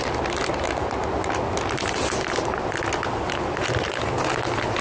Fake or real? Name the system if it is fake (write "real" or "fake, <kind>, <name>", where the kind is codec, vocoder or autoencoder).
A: real